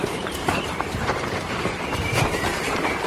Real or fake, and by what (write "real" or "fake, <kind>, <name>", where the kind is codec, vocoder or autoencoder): fake, vocoder, BigVGAN v2